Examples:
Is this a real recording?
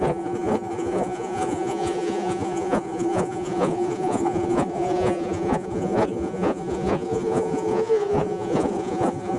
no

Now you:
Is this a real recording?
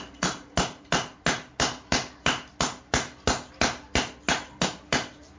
yes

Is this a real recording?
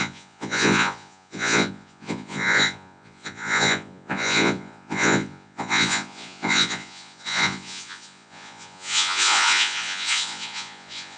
no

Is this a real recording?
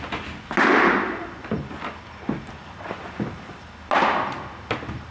yes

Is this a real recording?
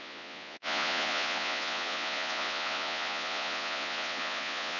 no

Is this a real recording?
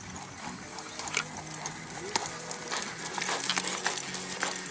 yes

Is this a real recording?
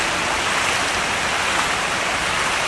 yes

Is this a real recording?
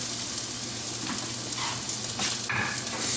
yes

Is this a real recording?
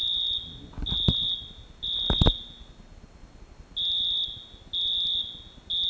yes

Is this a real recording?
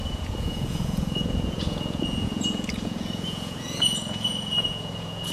no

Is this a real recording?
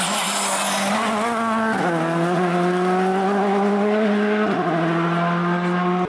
yes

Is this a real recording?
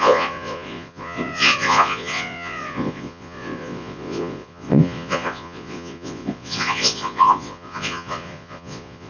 no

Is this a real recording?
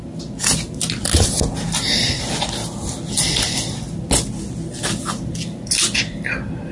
yes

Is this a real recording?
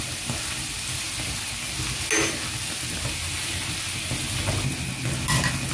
yes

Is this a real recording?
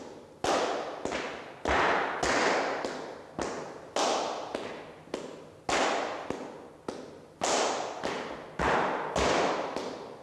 yes